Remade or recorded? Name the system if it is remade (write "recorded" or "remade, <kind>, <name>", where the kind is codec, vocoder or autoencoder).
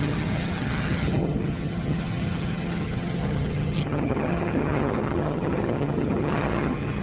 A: remade, vocoder, HiFi-GAN